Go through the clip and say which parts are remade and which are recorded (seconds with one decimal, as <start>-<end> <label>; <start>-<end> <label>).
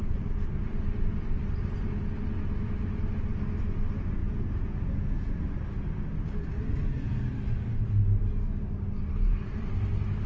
0.0-4.2 recorded; 4.2-5.4 remade; 5.4-6.8 recorded; 6.8-7.3 remade; 7.3-10.3 recorded